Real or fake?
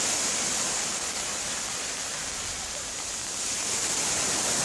real